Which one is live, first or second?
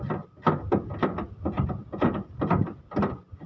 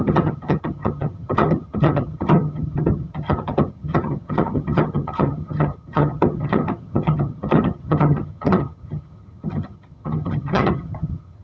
first